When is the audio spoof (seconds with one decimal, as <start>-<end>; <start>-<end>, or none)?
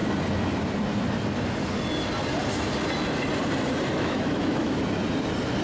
3.9-4.8